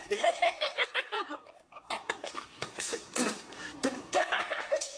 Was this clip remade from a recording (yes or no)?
yes